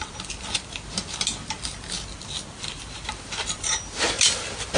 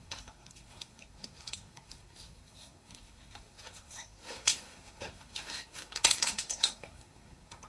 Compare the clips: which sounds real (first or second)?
first